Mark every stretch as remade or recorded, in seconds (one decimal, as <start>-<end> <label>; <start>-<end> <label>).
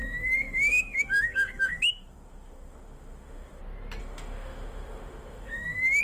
0.0-3.6 remade; 3.6-4.0 recorded; 4.0-6.0 remade